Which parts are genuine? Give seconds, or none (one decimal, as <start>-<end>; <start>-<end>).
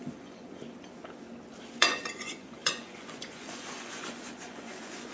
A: 0.6-1.8